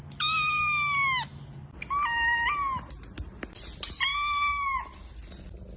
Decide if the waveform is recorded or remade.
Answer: recorded